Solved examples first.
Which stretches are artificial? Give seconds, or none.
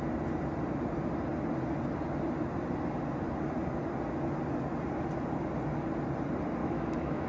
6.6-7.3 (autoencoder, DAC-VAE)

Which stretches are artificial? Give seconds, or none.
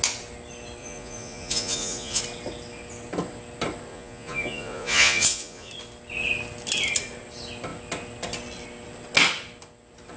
0.8-2.2 (vocoder, Vocos); 3.9-5.7